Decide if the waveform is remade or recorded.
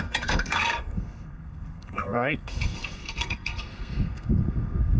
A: remade